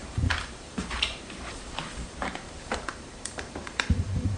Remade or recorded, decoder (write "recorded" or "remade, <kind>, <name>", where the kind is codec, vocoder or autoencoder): remade, vocoder, BigVGAN v2